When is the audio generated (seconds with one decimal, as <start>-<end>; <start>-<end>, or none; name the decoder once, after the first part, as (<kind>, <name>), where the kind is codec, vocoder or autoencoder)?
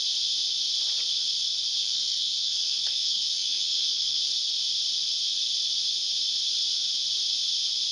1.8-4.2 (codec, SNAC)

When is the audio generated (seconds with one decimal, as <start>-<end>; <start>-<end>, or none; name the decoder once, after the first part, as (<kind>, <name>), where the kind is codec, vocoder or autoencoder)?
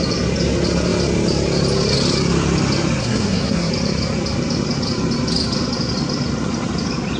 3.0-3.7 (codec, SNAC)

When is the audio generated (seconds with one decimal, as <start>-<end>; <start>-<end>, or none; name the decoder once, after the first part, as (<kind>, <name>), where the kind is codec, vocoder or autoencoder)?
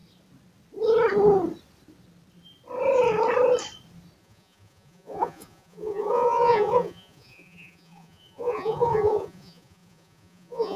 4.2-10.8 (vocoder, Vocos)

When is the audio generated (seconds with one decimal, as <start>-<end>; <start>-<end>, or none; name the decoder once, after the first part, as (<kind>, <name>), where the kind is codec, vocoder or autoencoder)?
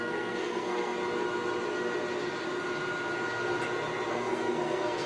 0.0-1.0 (codec, SNAC); 4.1-5.1